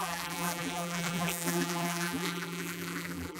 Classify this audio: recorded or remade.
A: remade